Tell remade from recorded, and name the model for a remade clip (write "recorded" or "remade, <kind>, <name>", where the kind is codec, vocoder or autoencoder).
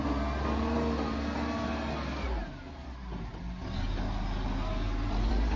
recorded